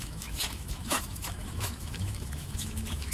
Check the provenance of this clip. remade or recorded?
remade